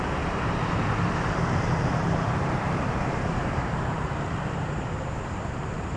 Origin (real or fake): fake